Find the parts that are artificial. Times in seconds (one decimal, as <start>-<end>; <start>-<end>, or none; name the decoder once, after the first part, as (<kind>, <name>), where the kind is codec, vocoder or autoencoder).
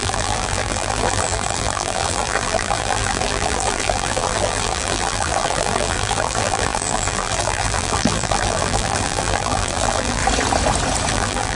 0.0-10.2 (vocoder, BigVGAN v2); 11.1-11.5